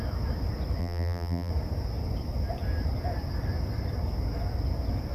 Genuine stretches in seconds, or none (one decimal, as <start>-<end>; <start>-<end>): 0.0-0.8; 1.5-5.1